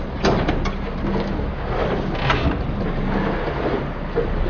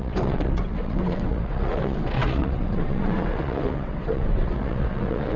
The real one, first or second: first